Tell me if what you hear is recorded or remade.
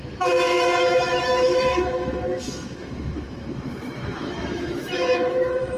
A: remade